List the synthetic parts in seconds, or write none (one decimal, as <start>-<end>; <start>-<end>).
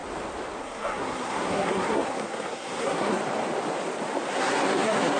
0.6-3.2; 4.3-5.2